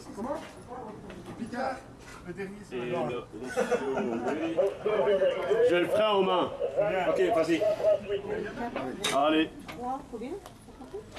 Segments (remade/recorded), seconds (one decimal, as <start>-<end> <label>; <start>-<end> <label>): 0.0-2.1 remade; 2.1-3.1 recorded; 3.1-5.8 remade; 5.8-7.2 recorded; 7.2-9.2 remade; 9.2-10.7 recorded; 10.7-11.2 remade